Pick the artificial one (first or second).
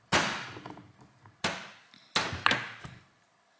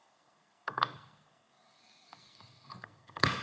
second